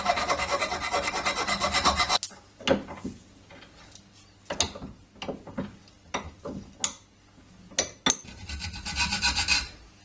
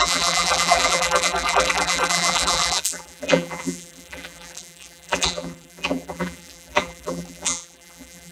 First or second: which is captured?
first